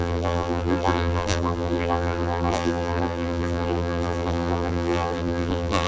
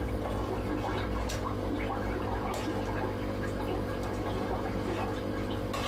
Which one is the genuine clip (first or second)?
second